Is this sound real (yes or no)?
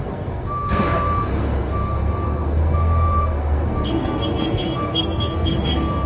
no